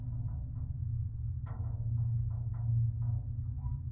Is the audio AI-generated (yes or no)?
no